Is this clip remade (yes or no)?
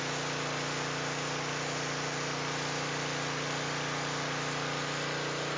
no